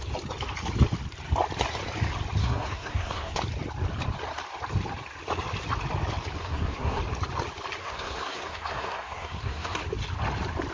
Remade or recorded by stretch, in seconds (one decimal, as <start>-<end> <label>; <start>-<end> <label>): 0.0-2.4 recorded; 2.4-3.4 remade; 3.4-6.4 recorded; 6.4-7.0 remade; 7.0-7.8 recorded; 7.8-9.8 remade; 9.8-10.7 recorded